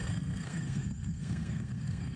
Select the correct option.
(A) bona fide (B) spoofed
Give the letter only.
B